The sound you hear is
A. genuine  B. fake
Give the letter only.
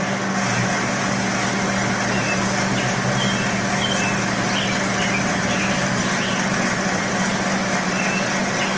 A